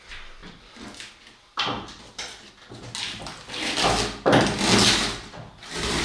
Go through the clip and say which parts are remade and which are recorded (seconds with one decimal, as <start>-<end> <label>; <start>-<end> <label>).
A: 0.0-0.4 recorded; 0.4-2.5 remade; 2.5-6.0 recorded